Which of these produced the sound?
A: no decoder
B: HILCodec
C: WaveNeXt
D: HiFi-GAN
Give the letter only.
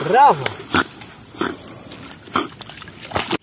A